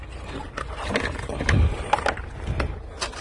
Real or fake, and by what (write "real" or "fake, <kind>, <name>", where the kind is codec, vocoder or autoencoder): real